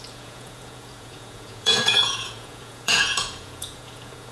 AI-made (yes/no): yes